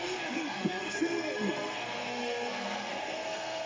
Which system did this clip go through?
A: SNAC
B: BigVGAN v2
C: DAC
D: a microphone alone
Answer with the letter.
A